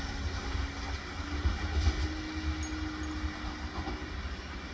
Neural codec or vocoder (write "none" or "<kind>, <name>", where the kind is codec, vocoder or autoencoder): none